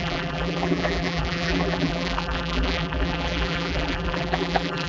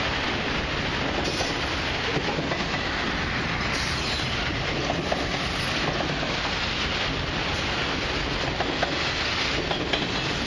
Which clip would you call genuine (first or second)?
second